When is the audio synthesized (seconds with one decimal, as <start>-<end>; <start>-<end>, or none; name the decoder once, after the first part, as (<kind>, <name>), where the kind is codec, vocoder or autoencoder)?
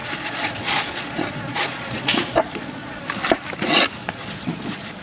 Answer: 0.0-3.0 (vocoder, Vocos); 4.0-5.0